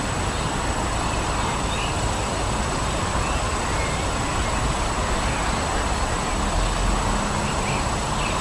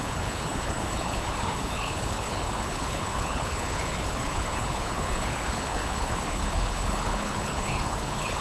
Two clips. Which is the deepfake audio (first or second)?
second